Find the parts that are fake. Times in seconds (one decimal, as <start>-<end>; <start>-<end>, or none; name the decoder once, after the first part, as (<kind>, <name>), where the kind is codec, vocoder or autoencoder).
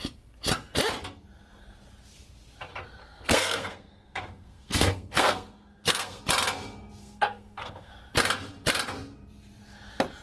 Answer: 3.0-6.2 (codec, SNAC); 7.0-7.9